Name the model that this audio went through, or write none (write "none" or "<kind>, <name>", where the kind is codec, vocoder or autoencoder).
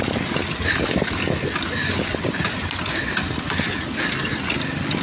none